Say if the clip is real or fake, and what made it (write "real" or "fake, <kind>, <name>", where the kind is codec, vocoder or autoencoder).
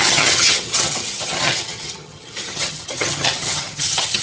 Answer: fake, vocoder, HiFi-GAN